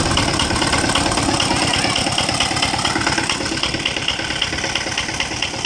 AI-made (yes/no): no